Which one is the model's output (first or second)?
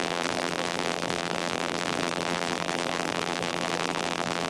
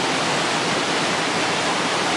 first